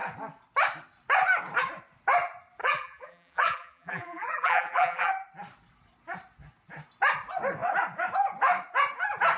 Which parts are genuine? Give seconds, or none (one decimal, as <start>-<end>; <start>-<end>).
0.0-2.6; 5.1-9.4